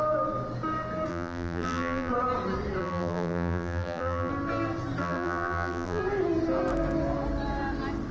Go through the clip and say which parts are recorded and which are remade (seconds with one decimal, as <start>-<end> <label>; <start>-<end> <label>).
0.0-1.1 recorded; 1.1-2.1 remade; 2.1-2.8 recorded; 2.8-4.3 remade; 4.3-5.0 recorded; 5.0-6.0 remade; 6.0-8.1 recorded